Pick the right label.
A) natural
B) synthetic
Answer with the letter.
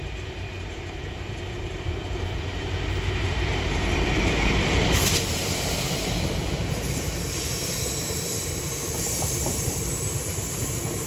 B